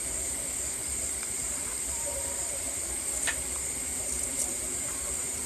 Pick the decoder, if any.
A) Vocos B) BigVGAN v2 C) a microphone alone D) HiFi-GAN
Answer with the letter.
B